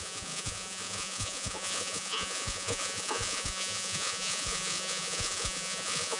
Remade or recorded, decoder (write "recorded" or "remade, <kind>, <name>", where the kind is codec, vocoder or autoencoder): remade, vocoder, Vocos